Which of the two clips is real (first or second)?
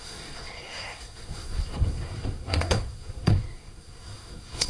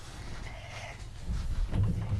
second